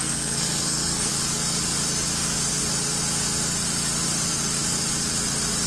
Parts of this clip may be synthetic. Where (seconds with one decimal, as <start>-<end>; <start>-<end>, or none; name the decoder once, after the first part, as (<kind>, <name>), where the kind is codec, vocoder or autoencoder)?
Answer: 0.0-1.1 (codec, SNAC)